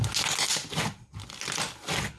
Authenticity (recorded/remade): recorded